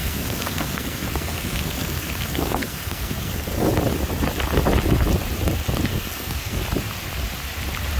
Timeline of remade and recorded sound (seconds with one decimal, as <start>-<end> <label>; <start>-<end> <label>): 0.0-3.7 remade; 3.7-5.9 recorded; 5.9-6.6 remade; 6.6-8.0 recorded